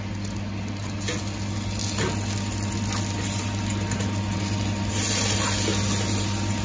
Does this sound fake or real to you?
real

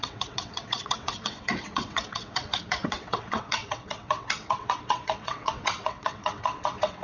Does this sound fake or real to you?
fake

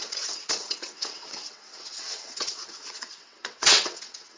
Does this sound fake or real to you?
fake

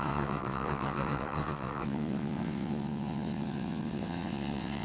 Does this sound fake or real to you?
fake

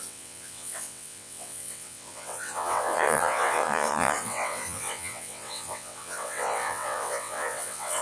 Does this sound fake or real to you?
fake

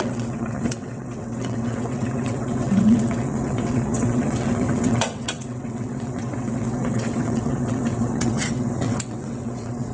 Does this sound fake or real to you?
fake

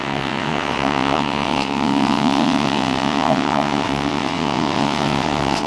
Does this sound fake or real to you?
fake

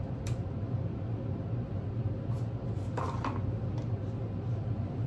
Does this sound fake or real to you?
real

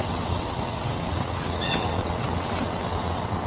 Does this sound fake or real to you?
fake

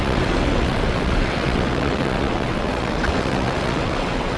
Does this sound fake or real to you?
fake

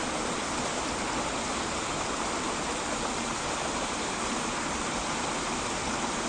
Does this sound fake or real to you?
real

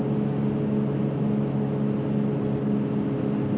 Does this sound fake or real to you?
real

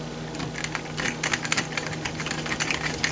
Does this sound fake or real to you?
real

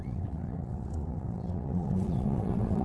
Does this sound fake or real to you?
fake